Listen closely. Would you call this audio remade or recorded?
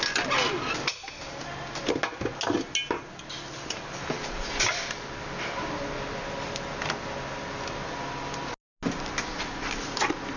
recorded